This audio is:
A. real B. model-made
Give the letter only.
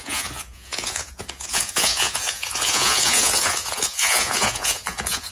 B